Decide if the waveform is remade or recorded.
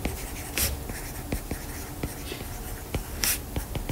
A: recorded